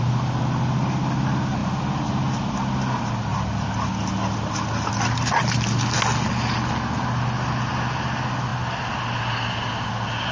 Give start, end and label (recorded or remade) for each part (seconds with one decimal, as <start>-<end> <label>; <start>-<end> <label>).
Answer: 0.0-10.3 recorded